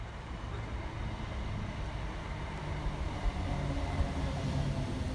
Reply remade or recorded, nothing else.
recorded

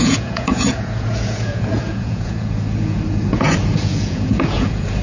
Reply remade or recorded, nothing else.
remade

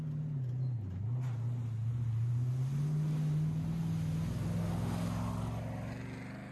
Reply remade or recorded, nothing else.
recorded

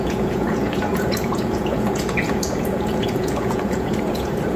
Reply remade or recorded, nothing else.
remade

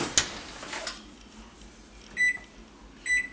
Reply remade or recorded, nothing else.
recorded